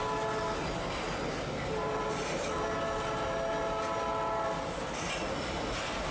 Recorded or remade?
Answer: recorded